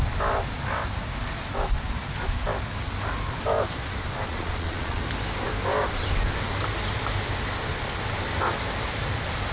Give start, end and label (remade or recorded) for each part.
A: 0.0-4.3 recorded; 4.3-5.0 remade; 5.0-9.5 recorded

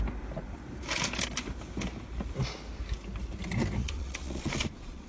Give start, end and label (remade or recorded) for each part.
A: 0.0-3.8 recorded; 3.8-5.1 remade

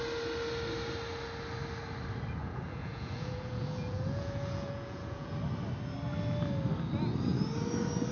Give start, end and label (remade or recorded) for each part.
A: 0.0-2.4 recorded; 2.4-5.3 remade; 5.3-8.1 recorded

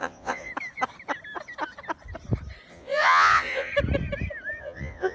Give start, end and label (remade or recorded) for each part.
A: 0.0-0.5 remade; 0.5-2.7 recorded; 2.7-3.7 remade; 3.7-4.6 recorded; 4.6-5.1 remade

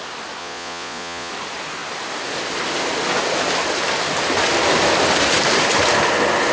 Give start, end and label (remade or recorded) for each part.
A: 0.0-0.4 recorded; 0.4-1.3 remade; 1.3-6.5 recorded

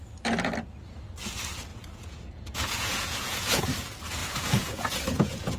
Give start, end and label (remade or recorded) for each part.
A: 0.0-1.7 recorded; 1.7-3.6 remade; 3.6-4.2 recorded; 4.2-5.6 remade

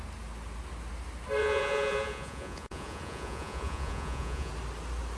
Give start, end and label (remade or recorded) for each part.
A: 0.0-1.4 recorded; 1.4-4.5 remade; 4.5-5.2 recorded

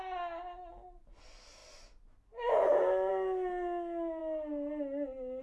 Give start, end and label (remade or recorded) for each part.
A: 0.0-5.4 recorded